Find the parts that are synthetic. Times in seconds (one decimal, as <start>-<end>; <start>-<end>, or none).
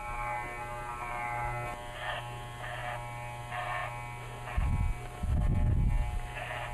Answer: none